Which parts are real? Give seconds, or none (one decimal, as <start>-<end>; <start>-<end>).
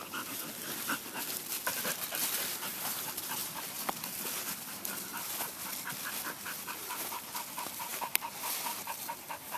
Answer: 0.0-9.6